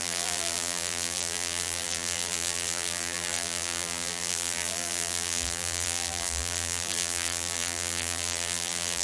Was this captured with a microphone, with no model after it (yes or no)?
no